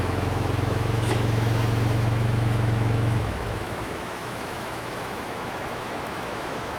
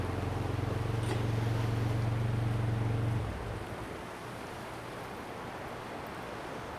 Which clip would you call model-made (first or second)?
first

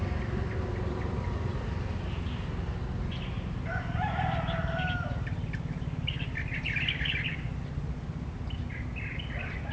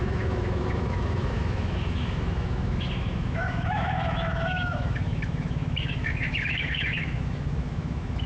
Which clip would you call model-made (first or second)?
second